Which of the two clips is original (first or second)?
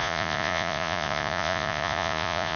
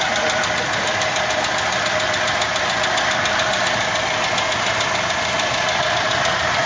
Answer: second